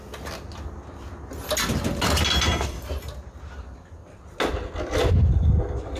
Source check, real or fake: real